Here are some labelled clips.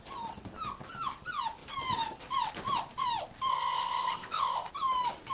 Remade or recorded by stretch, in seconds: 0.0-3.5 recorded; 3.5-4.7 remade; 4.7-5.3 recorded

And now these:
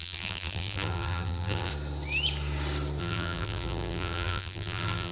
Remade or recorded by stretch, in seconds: 0.0-1.7 remade; 1.7-3.0 recorded; 3.0-5.1 remade